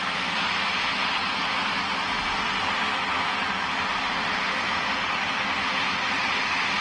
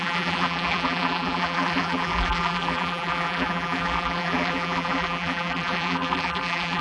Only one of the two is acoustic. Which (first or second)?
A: first